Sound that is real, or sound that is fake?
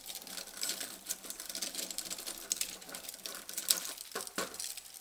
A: real